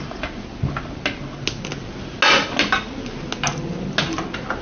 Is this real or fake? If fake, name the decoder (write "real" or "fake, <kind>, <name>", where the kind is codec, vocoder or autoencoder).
real